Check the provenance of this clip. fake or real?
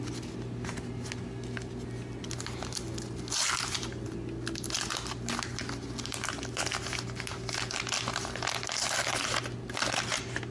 real